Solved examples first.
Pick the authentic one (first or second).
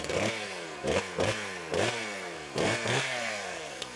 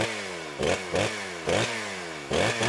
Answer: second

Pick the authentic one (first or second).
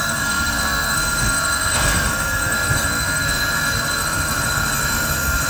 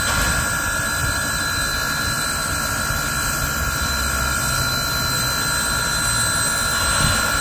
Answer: second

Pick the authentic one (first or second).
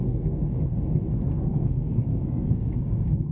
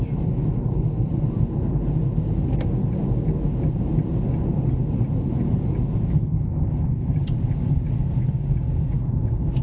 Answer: second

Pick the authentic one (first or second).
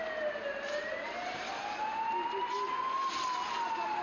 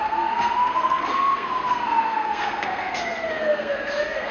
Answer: first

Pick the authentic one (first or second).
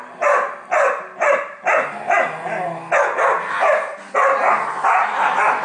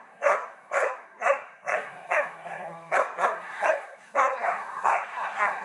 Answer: first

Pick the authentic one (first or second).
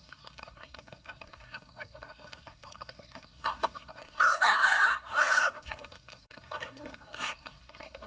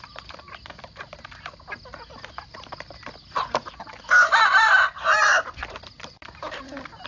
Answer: second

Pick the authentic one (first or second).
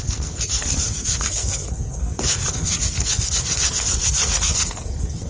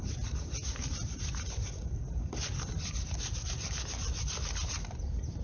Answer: second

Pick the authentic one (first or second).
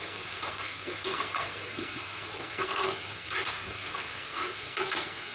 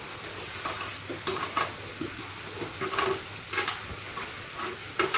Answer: second